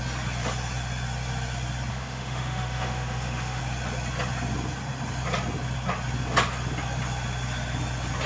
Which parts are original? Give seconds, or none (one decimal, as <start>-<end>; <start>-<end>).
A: 0.0-1.9; 3.6-8.3